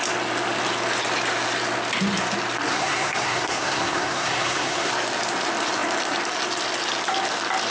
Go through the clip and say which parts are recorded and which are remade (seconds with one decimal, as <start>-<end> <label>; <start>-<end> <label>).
0.0-2.7 recorded; 2.7-4.9 remade; 4.9-7.7 recorded